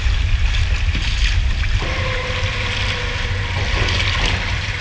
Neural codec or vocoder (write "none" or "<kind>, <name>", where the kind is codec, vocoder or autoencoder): none